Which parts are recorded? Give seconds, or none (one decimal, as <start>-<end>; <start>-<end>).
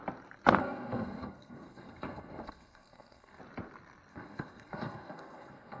0.0-0.6; 3.4-4.1